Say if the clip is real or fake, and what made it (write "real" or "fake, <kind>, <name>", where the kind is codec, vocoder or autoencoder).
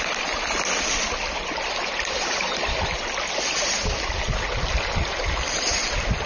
real